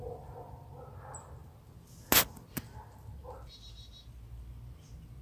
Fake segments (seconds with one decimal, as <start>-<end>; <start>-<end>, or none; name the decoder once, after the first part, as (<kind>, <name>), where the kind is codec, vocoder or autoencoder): none